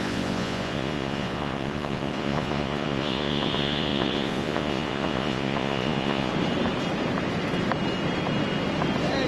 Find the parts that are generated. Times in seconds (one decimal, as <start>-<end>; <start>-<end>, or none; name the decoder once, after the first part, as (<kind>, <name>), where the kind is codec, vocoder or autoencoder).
0.0-6.3 (vocoder, Vocos)